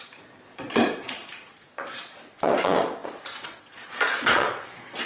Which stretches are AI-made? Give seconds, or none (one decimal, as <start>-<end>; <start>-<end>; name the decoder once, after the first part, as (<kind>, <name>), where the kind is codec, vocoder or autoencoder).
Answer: 0.0-5.1 (vocoder, Vocos)